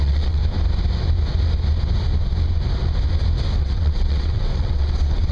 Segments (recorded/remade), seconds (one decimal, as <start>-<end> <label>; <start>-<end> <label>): 0.0-0.4 remade; 0.4-3.6 recorded; 3.6-5.3 remade